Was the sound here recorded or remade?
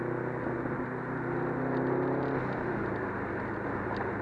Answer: recorded